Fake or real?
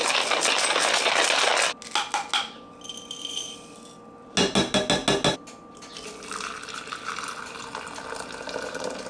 real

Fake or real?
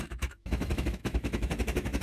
fake